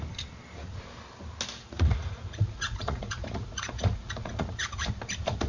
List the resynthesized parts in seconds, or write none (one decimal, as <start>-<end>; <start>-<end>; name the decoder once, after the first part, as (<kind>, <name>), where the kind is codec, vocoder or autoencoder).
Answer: 1.6-4.9 (vocoder, Vocos)